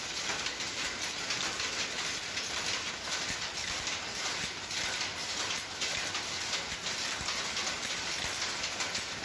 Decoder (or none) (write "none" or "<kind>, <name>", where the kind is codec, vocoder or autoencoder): none